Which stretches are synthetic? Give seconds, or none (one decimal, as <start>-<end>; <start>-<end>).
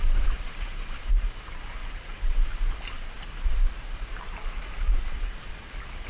0.0-1.1; 1.8-5.5